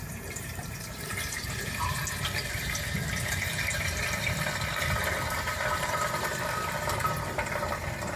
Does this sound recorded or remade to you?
remade